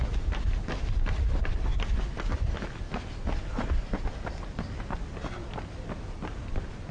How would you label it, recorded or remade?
recorded